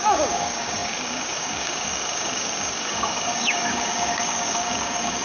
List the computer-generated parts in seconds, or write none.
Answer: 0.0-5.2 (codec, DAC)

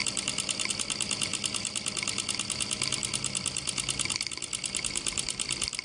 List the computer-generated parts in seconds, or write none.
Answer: 0.0-0.7 (vocoder, BigVGAN v2)

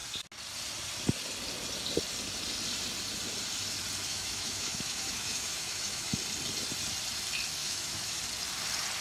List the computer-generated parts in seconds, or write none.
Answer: 4.1-6.1 (autoencoder, DAC-VAE); 7.6-8.2

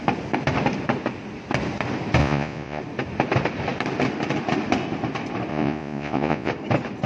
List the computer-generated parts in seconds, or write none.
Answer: 2.2-2.8 (vocoder, Vocos); 5.5-6.5

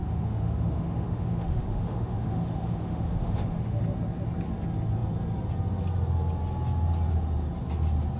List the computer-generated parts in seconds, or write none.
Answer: 0.0-3.8 (autoencoder, DAC-VAE)

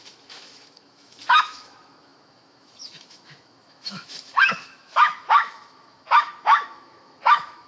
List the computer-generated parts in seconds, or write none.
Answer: 0.0-7.7 (autoencoder, DAC-VAE)